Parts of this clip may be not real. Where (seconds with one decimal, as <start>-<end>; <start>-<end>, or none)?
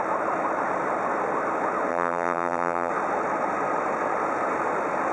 1.9-2.9